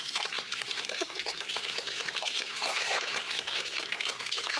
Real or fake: fake